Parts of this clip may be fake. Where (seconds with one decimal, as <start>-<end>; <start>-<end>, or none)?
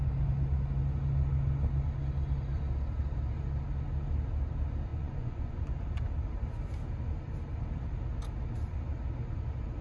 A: 4.9-5.7